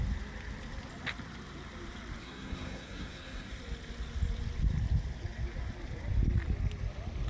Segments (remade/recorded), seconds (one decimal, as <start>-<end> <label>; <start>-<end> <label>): 0.0-2.2 recorded; 2.2-3.5 remade; 3.5-7.3 recorded